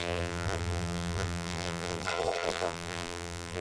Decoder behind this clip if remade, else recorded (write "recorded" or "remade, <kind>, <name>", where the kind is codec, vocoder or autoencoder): remade, vocoder, BigVGAN v2